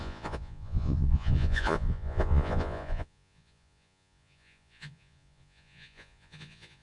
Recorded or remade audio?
remade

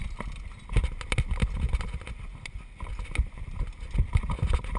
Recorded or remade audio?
recorded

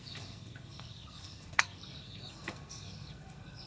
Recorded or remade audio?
remade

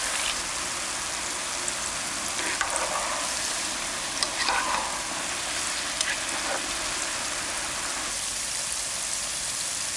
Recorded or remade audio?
recorded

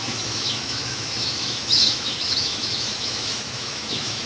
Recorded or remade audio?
remade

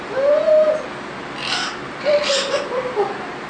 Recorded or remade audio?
recorded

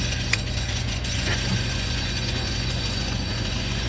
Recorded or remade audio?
remade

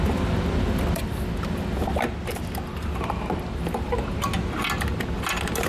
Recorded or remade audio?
recorded